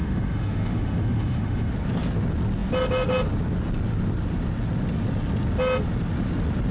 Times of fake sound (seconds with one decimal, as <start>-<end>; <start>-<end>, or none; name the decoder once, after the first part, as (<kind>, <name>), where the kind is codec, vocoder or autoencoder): 0.0-1.7 (autoencoder, DAC-VAE)